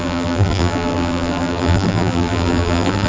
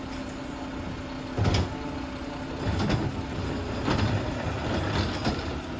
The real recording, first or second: second